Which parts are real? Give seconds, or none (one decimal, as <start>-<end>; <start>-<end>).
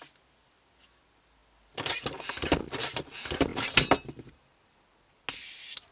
0.0-5.9